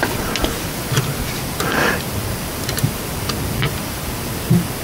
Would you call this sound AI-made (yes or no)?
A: yes